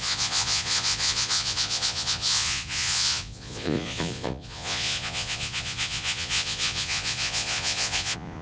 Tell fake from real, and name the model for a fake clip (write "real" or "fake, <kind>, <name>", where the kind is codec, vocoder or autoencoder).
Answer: fake, vocoder, Vocos